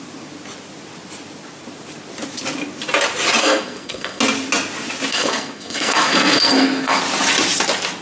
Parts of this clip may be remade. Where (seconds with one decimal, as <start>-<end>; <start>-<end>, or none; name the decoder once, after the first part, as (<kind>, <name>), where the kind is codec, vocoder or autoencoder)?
3.4-4.2 (codec, SNAC); 5.1-7.0